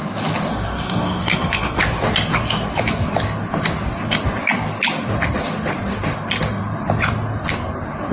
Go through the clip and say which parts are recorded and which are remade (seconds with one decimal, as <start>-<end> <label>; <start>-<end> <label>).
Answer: 0.0-0.5 recorded; 0.5-1.8 remade; 1.8-8.1 recorded